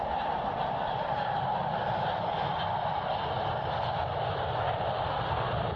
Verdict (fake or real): fake